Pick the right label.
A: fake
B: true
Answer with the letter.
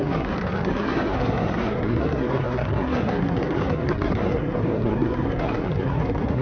A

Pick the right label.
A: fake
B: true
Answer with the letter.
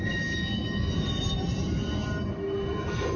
B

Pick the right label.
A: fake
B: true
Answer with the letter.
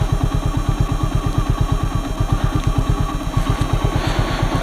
B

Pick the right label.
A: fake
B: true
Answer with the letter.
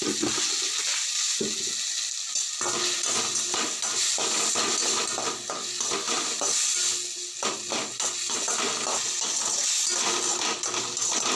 B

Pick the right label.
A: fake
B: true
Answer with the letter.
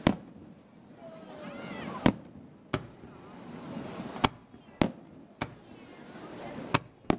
B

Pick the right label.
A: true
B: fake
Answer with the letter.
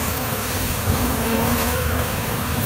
B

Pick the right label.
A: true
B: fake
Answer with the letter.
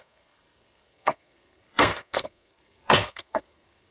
B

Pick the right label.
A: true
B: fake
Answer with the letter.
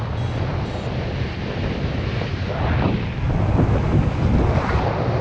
A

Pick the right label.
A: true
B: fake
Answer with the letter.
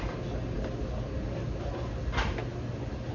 A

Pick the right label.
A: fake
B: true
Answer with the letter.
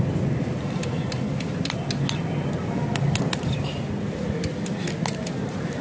B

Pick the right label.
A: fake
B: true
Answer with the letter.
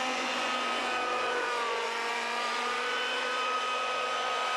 A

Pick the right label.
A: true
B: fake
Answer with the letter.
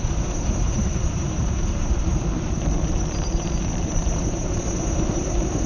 B